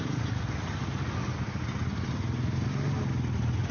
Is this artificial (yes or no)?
no